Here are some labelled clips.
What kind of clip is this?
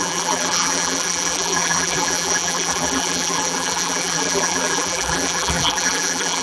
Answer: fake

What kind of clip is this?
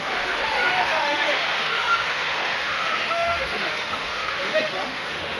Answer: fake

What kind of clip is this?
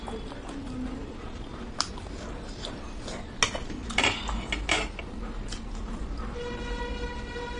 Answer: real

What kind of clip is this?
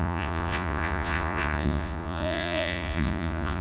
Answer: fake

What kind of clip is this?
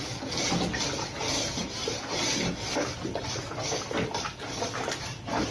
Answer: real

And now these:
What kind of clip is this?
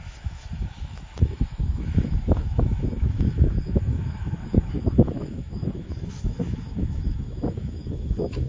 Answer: fake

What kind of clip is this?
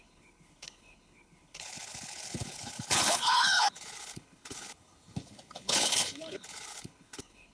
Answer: fake